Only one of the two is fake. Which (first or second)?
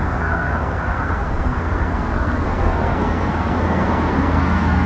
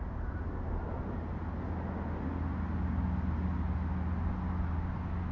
first